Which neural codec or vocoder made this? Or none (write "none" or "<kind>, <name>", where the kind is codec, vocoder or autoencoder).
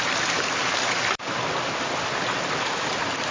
none